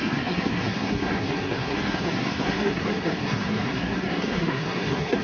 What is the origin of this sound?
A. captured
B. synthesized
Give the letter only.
B